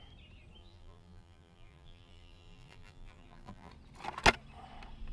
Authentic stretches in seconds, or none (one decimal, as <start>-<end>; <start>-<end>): 0.0-0.6; 3.7-5.1